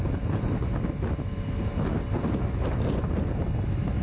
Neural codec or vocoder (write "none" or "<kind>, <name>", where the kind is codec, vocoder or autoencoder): none